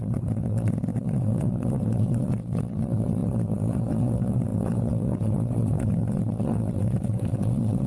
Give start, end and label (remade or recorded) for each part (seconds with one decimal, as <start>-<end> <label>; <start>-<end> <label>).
0.0-7.9 remade